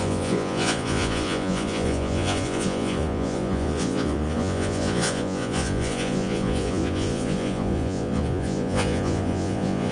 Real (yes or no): no